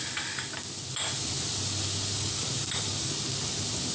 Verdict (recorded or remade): recorded